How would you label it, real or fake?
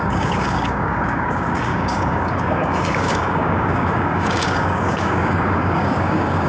fake